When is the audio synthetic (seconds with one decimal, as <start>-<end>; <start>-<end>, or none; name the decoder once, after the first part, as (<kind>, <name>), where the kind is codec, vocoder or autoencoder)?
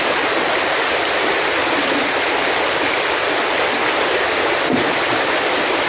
1.6-2.1 (vocoder, Vocos)